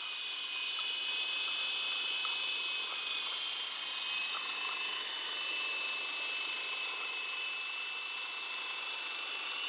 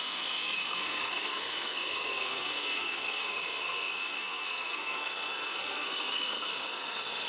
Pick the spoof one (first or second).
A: second